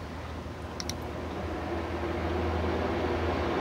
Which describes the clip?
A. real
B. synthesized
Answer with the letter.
A